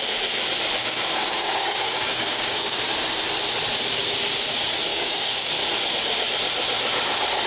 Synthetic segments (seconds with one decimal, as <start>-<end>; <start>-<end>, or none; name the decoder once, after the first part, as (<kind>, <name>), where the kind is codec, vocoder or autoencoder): 0.8-2.9 (codec, DAC); 4.9-5.5